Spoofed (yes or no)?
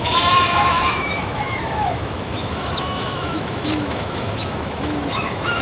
yes